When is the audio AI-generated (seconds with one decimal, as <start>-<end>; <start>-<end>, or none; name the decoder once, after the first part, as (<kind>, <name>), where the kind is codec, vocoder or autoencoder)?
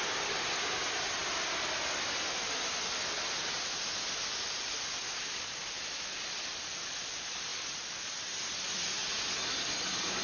none